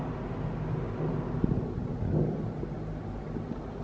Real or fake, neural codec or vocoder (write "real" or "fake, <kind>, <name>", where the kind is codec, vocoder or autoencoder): real